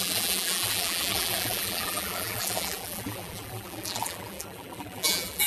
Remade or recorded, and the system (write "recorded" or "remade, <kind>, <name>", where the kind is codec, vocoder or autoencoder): remade, vocoder, BigVGAN v2